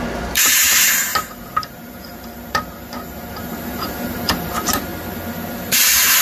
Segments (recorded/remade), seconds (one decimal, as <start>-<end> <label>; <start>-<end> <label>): 0.0-4.9 remade; 4.9-5.6 recorded; 5.6-6.2 remade